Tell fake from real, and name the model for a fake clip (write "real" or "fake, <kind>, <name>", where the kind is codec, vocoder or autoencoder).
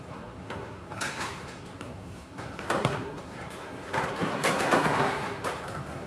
fake, codec, SNAC